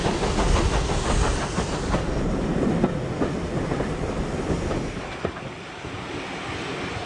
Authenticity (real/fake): real